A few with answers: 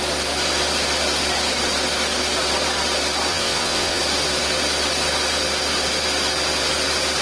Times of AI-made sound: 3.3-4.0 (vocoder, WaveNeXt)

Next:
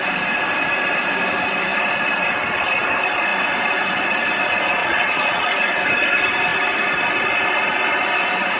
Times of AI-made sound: 4.8-5.5 (vocoder, Vocos)

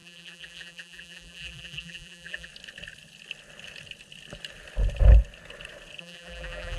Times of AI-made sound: 0.0-2.5 (vocoder, BigVGAN v2); 6.0-6.8

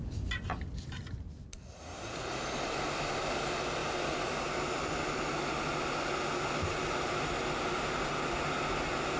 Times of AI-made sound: none